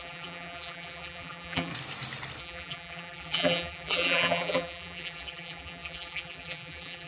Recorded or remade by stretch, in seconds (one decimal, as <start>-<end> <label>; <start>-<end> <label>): 0.0-1.7 remade; 1.7-2.4 recorded; 2.4-7.1 remade